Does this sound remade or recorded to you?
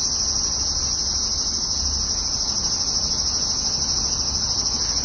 recorded